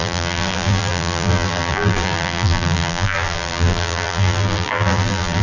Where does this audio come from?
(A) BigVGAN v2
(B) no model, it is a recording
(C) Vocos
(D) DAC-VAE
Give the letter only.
A